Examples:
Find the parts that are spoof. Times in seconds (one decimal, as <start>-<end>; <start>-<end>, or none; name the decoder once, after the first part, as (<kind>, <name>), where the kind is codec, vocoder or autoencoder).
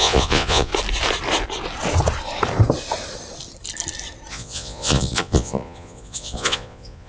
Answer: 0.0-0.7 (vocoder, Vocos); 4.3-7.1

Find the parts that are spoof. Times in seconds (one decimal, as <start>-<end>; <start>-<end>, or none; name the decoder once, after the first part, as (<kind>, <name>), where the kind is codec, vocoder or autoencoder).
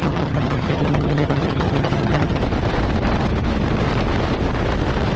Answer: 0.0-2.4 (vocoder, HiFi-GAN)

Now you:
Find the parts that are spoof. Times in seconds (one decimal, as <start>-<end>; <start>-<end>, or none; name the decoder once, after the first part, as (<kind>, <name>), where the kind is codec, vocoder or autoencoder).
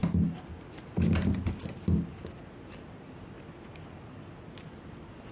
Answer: 3.2-5.3 (vocoder, BigVGAN v2)